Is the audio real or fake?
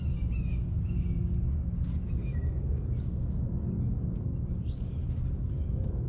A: fake